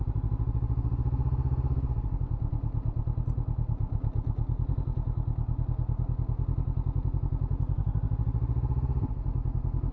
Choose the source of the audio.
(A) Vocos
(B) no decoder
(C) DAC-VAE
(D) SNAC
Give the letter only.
B